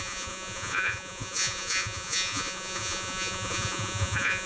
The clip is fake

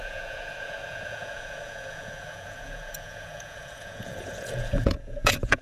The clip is fake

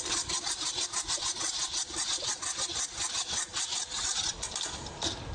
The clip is real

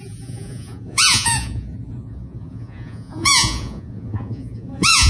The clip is fake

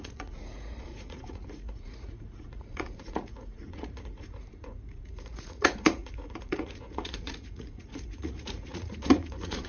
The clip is fake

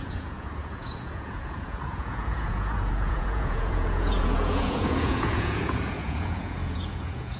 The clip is fake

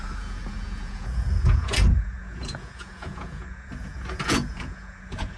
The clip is fake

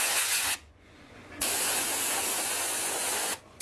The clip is fake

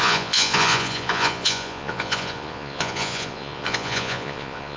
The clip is fake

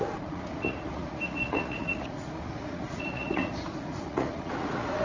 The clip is fake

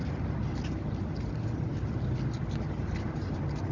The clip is real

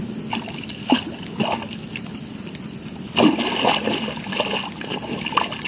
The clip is real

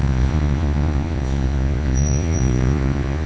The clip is fake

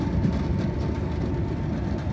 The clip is real